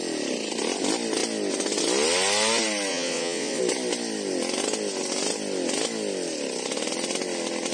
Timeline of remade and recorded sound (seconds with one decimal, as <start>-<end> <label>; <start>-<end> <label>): 0.0-2.9 recorded; 2.9-3.6 remade; 3.6-7.7 recorded